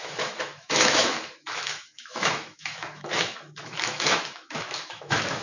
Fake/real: fake